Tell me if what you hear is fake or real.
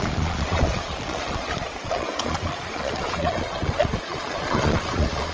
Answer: fake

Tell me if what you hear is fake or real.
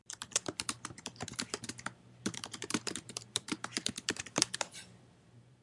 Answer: fake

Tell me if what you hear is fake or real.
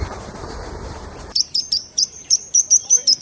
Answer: fake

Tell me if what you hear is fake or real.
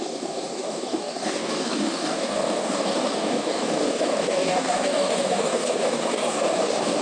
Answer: fake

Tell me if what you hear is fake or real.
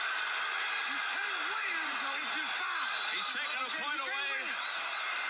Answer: real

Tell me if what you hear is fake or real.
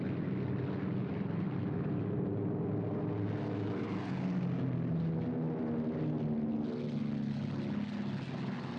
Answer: real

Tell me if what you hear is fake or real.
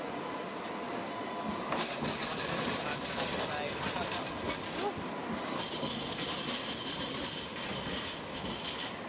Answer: real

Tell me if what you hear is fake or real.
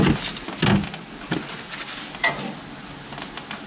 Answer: real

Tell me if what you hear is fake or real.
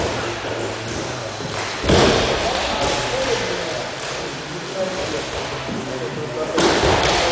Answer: real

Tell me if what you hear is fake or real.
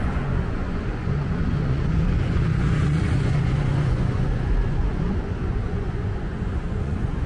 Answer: fake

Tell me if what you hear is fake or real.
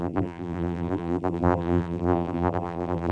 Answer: fake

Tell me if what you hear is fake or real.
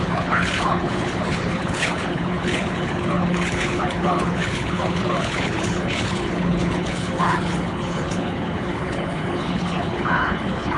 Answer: fake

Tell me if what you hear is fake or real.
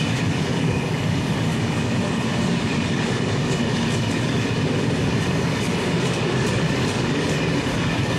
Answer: fake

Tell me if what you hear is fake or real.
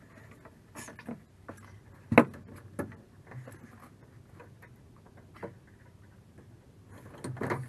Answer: real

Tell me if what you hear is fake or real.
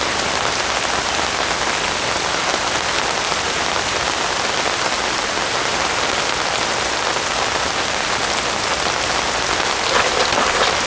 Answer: real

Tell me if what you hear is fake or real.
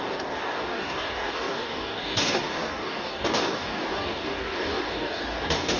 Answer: fake